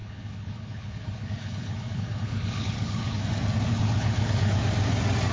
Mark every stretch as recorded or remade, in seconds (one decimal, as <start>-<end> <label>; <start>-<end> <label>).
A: 0.0-3.2 remade; 3.2-3.7 recorded; 3.7-4.5 remade; 4.5-5.3 recorded